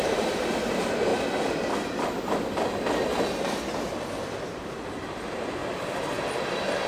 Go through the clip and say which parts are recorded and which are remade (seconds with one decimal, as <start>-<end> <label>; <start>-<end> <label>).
0.0-1.1 remade; 1.1-3.9 recorded; 3.9-5.6 remade; 5.6-6.5 recorded; 6.5-6.9 remade